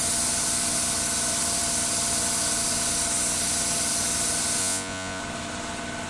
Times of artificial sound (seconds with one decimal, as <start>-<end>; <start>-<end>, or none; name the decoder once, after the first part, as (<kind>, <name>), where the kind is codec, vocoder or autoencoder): 4.6-5.2 (vocoder, Vocos)